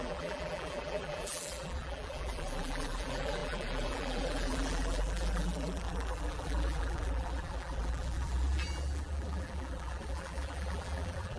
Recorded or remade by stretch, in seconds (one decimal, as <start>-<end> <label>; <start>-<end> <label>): 0.0-11.4 remade